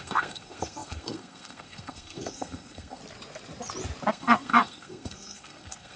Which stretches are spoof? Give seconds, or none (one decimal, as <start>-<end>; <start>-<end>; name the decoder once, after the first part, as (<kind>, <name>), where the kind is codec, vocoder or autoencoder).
0.0-3.0 (codec, SNAC); 4.1-6.0